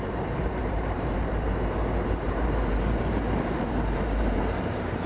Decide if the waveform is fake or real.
fake